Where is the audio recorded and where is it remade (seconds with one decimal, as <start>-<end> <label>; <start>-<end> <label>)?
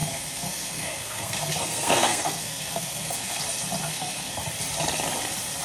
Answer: 0.0-3.4 remade; 3.4-3.9 recorded; 3.9-4.4 remade; 4.4-5.6 recorded